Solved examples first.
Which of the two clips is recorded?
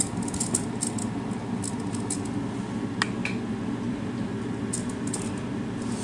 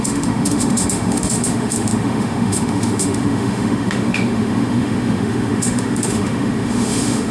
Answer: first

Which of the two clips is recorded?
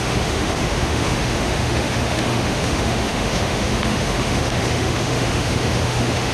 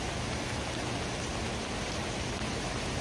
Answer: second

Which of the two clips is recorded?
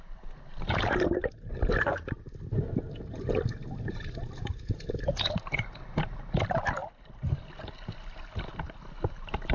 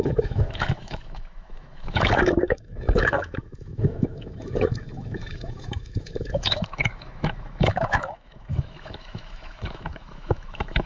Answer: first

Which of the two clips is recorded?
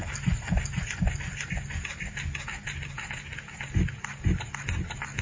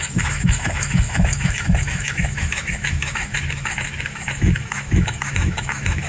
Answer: first